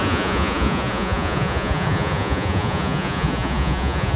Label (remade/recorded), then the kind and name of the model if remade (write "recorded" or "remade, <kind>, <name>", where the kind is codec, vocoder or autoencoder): remade, vocoder, Vocos